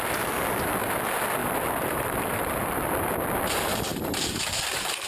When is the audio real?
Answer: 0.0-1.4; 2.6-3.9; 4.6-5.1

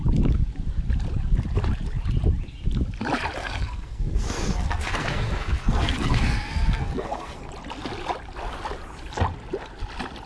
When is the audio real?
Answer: 0.0-3.4; 7.5-10.3

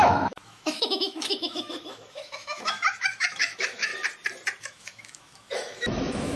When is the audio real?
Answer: 3.9-4.6

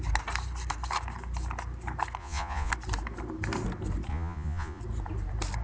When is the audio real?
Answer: 0.0-2.2; 2.7-4.1; 4.8-5.6

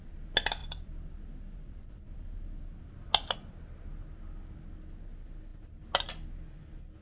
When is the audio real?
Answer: 0.0-0.6; 3.1-7.0

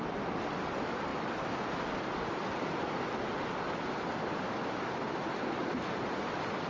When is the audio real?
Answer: 0.0-6.7